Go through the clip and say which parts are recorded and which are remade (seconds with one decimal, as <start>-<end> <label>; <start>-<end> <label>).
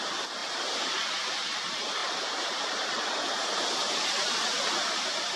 0.0-2.0 recorded; 2.0-4.3 remade; 4.3-5.4 recorded